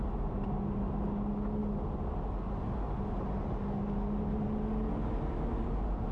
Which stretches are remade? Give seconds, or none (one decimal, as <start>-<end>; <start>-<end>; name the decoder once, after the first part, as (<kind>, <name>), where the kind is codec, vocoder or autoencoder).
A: none